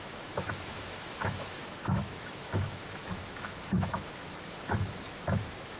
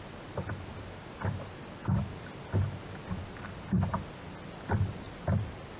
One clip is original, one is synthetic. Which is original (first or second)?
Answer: second